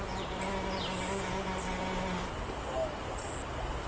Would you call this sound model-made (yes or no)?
no